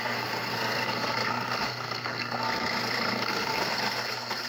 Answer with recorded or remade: remade